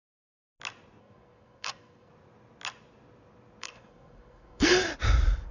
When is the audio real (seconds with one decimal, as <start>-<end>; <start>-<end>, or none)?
0.0-1.0; 2.1-3.6; 4.7-5.5